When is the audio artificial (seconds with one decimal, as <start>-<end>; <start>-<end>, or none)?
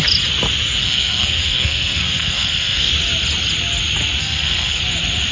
0.8-2.9; 4.2-4.8